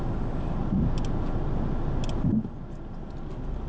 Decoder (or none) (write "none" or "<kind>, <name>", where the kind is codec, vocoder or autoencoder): none